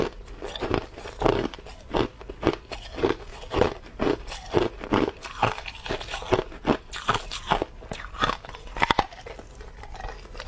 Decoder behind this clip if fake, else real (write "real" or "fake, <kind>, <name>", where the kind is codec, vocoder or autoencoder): real